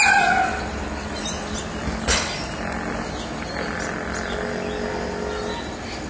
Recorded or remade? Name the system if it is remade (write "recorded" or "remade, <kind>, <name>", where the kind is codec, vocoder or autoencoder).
recorded